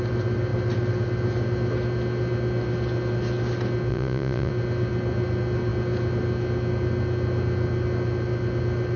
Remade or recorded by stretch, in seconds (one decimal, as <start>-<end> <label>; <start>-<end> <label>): 0.0-3.9 recorded; 3.9-4.5 remade; 4.5-9.0 recorded